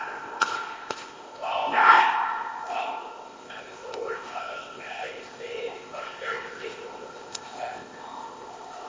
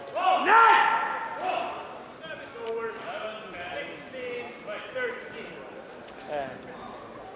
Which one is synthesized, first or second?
first